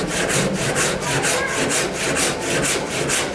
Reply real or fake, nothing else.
real